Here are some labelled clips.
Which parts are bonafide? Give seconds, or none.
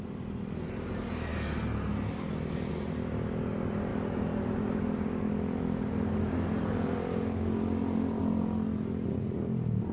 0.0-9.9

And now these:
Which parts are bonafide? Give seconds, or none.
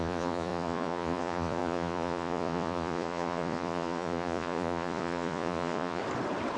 6.0-6.6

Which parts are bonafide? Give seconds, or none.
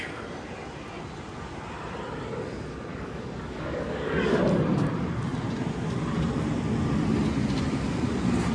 0.0-2.9; 4.4-8.5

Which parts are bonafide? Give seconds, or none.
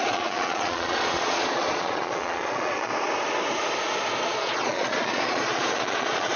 2.9-4.2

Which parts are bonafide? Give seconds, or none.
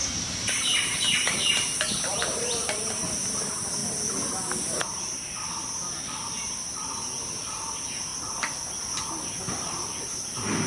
3.8-6.2; 8.1-9.1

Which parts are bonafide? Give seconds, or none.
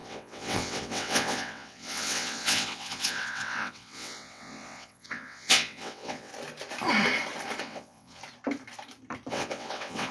6.3-7.6; 8.2-9.3